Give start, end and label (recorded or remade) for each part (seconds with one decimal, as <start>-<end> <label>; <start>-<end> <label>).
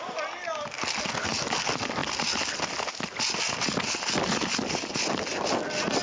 0.0-6.0 recorded